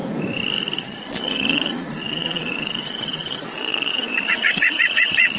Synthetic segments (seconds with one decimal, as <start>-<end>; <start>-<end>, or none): 0.8-5.4